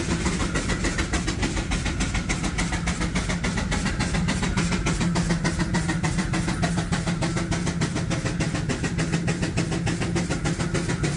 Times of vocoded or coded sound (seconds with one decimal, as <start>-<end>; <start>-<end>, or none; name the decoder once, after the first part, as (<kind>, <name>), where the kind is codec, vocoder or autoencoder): none